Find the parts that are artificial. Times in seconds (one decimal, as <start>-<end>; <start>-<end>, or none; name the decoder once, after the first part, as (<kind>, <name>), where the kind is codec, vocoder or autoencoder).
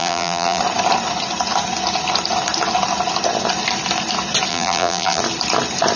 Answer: 0.0-0.6 (vocoder, BigVGAN v2); 4.5-5.2